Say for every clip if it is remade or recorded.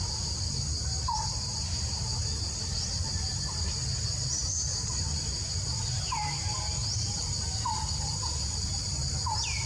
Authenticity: recorded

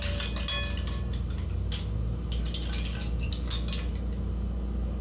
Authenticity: recorded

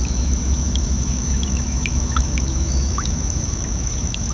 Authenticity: remade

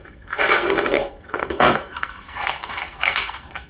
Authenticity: remade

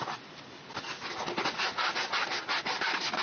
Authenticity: recorded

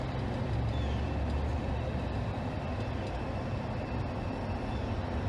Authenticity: recorded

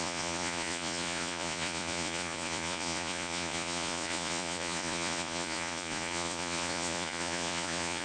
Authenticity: remade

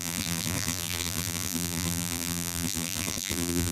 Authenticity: remade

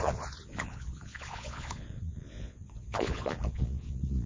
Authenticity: remade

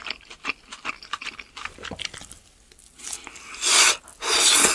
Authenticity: recorded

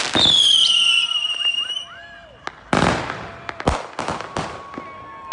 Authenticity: recorded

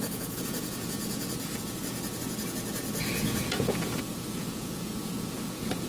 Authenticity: remade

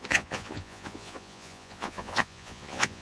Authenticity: remade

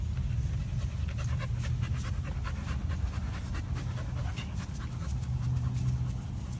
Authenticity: recorded